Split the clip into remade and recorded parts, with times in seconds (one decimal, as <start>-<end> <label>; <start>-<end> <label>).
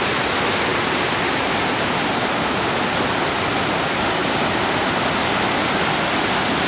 0.0-0.7 recorded; 0.7-2.7 remade; 2.7-6.7 recorded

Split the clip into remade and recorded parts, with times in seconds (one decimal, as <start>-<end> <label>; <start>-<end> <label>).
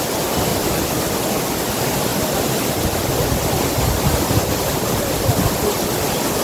0.0-0.5 recorded; 0.5-1.4 remade; 1.4-6.4 recorded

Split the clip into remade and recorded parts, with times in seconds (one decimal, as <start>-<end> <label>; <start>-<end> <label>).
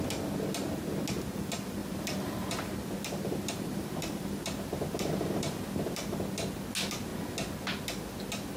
0.0-1.8 recorded; 1.8-6.2 remade; 6.2-8.6 recorded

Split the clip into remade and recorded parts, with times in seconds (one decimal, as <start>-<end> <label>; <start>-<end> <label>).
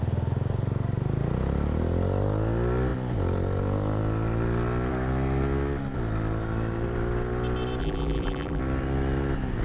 0.0-7.8 recorded; 7.8-8.6 remade; 8.6-9.6 recorded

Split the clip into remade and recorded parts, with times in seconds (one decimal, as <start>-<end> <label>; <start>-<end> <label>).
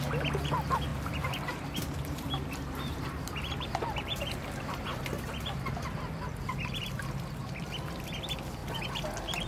0.0-0.9 recorded; 0.9-5.0 remade; 5.0-9.5 recorded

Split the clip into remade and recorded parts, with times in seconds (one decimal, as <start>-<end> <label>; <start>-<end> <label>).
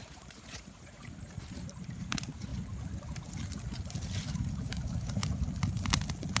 0.0-2.5 remade; 2.5-3.9 recorded; 3.9-5.2 remade; 5.2-6.4 recorded